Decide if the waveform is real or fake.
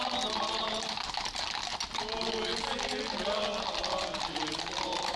real